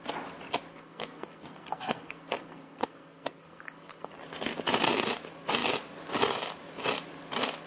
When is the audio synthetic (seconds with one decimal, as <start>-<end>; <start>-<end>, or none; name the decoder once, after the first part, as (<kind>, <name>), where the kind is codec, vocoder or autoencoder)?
0.7-4.1 (codec, SNAC)